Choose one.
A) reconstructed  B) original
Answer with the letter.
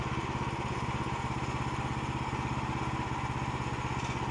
B